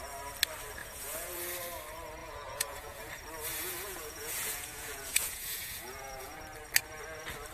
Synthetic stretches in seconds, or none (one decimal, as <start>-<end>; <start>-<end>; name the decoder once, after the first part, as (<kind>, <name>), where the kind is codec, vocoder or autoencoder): 0.8-1.4 (vocoder, Vocos); 2.2-3.1; 3.5-6.4